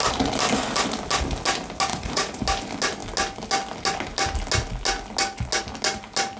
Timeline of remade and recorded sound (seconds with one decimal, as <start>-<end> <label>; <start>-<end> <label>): 0.0-1.9 recorded; 1.9-2.4 remade; 2.4-6.4 recorded